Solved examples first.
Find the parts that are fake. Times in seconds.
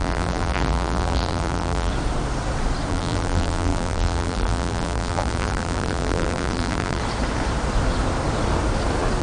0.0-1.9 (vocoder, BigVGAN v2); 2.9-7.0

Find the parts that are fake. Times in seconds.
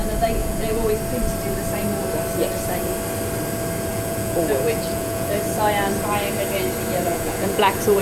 0.4-0.9 (vocoder, Vocos); 3.9-5.3; 7.1-8.0